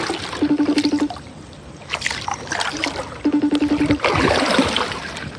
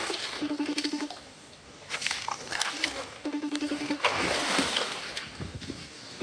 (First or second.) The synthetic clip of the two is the second